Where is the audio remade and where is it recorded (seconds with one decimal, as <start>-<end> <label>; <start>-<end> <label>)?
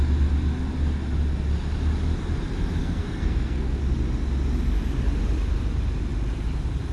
0.0-2.8 recorded; 2.8-3.8 remade; 3.8-6.9 recorded